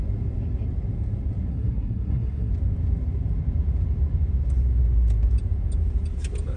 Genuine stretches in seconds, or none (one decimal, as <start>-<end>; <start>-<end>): 0.0-1.5; 2.5-6.6